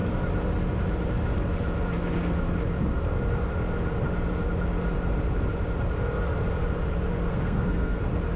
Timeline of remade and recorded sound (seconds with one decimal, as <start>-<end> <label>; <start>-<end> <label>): 0.0-7.3 recorded; 7.3-8.0 remade; 8.0-8.4 recorded